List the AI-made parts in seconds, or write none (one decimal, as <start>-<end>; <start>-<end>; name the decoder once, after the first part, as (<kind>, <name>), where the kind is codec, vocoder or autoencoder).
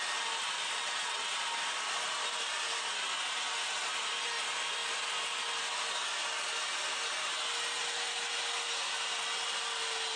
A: 0.8-1.4 (vocoder, WaveNeXt)